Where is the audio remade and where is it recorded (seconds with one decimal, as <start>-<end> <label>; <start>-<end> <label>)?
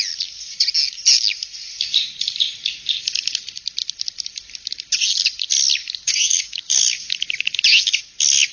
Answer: 0.0-6.0 recorded; 6.0-6.8 remade; 6.8-8.5 recorded